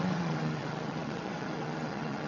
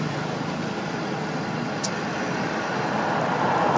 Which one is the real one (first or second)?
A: second